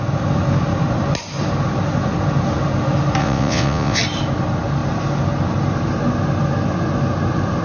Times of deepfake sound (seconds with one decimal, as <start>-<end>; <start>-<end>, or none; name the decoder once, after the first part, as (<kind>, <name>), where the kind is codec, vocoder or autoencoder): 3.2-4.0 (vocoder, WaveNeXt)